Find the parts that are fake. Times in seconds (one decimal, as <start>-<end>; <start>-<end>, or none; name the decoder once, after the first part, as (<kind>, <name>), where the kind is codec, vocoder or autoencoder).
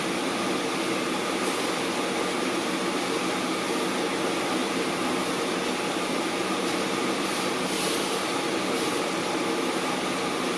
4.6-9.3 (vocoder, BigVGAN v2)